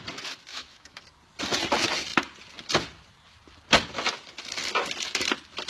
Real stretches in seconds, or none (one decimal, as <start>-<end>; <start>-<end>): 0.0-0.5; 1.0-5.7